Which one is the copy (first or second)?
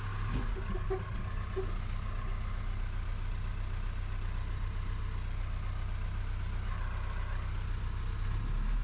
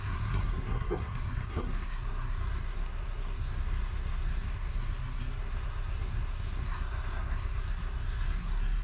second